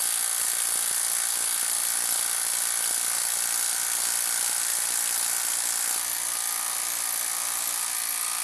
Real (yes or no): yes